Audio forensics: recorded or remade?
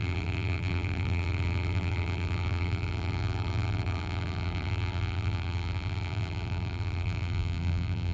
remade